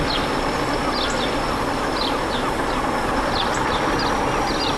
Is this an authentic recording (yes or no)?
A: yes